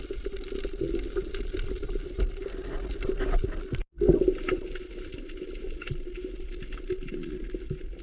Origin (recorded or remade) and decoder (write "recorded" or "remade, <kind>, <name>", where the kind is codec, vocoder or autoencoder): recorded